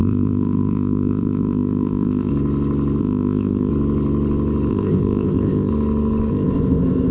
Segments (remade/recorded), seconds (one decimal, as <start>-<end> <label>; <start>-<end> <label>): 0.0-2.3 remade; 2.3-3.0 recorded; 3.0-3.7 remade; 3.7-4.7 recorded; 4.7-5.7 remade; 5.7-6.3 recorded; 6.3-7.1 remade